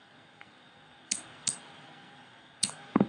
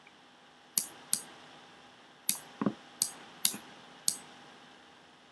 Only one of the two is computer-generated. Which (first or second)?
first